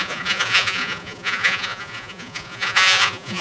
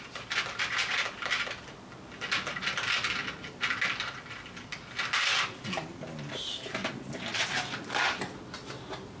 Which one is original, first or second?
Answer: second